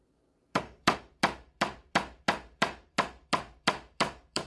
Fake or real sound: fake